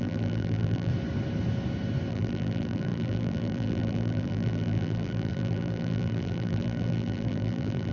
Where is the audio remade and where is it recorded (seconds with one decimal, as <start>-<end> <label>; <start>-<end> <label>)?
0.0-0.9 remade; 0.9-2.1 recorded; 2.1-7.9 remade